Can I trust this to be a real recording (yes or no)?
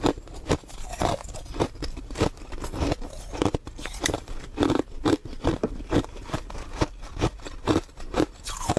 no